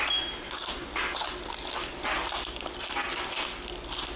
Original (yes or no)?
yes